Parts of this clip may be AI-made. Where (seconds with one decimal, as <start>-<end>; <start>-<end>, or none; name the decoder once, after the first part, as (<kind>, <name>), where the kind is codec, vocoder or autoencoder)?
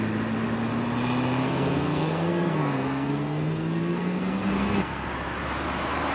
1.4-5.1 (codec, SNAC)